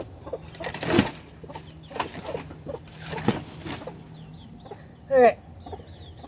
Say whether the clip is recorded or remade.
recorded